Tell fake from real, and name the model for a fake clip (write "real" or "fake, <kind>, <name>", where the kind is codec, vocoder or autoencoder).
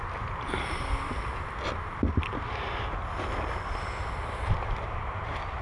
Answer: real